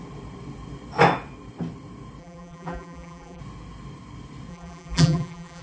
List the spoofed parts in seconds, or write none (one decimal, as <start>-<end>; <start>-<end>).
2.2-3.4; 4.5-5.6